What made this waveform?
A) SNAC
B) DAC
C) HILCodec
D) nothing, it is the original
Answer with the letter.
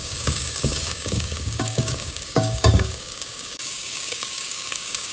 B